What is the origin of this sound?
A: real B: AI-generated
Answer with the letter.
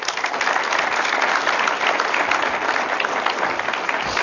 A